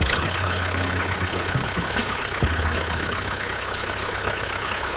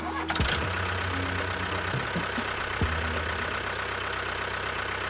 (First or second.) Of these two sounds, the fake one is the first